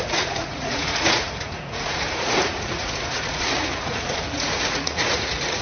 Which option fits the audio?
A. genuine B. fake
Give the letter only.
B